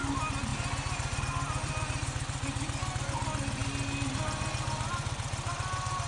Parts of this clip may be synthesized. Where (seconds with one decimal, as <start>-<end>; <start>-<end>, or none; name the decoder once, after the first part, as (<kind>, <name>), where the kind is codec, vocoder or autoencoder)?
none